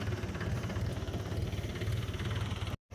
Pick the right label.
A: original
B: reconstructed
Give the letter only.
A